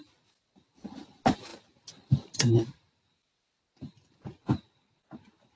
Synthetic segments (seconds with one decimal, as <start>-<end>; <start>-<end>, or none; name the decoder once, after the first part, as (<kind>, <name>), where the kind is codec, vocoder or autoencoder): none